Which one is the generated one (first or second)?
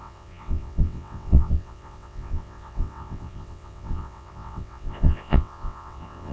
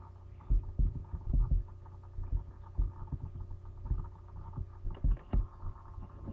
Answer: first